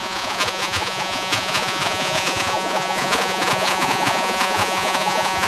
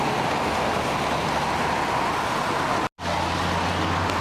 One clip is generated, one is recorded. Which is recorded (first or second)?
second